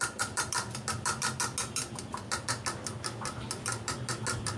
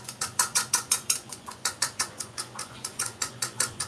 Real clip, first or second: first